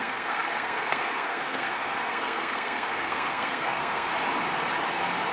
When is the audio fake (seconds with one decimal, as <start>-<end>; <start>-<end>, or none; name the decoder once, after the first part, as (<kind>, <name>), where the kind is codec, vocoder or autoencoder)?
0.0-4.1 (codec, SNAC)